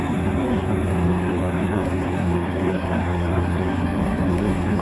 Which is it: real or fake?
fake